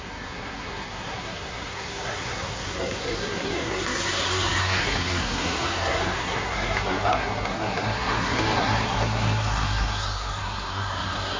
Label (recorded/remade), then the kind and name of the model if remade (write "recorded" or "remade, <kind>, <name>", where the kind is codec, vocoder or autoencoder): remade, codec, SNAC